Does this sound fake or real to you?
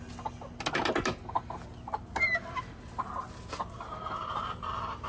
real